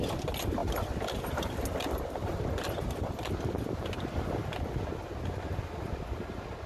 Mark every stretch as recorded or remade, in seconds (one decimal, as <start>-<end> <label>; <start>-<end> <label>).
0.0-6.7 recorded